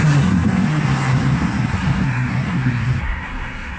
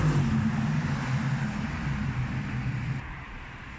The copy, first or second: first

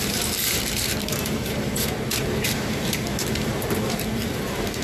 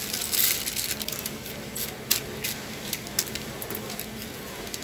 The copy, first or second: first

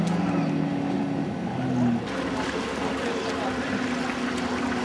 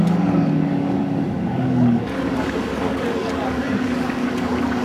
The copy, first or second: second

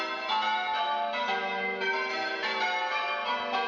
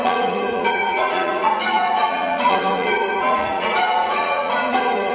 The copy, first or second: second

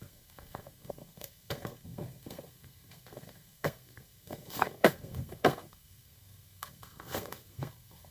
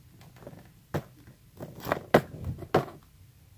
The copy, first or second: first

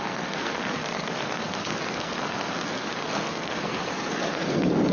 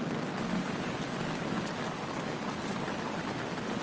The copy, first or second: first